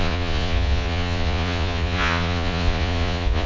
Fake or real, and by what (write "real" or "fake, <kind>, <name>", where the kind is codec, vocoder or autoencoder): fake, vocoder, Vocos